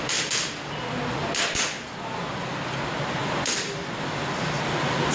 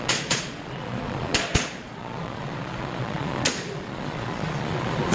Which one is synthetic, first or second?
second